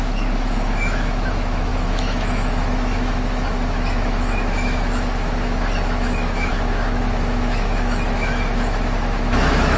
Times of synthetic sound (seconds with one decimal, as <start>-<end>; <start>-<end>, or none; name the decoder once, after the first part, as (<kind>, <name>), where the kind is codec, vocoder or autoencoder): 0.0-9.8 (autoencoder, DAC-VAE)